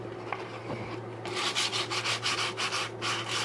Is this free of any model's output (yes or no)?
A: yes